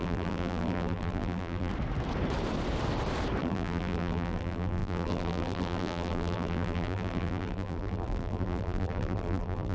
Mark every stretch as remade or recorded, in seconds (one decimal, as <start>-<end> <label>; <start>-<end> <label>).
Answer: 0.0-1.7 remade; 1.7-3.4 recorded; 3.4-9.7 remade